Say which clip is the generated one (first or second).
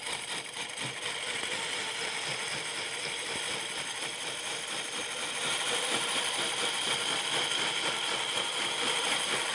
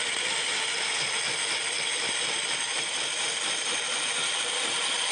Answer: first